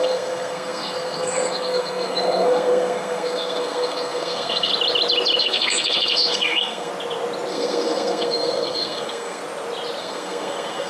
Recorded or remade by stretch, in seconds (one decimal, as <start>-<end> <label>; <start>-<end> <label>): 0.0-4.7 remade; 4.7-5.4 recorded; 5.4-6.9 remade; 6.9-7.5 recorded; 7.5-9.4 remade; 9.4-10.0 recorded; 10.0-10.9 remade